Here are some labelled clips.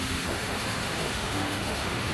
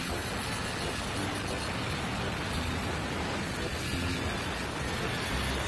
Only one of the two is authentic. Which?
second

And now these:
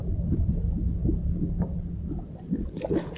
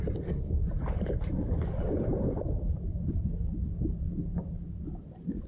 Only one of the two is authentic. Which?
first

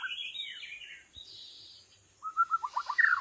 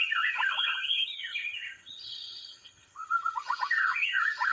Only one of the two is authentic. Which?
first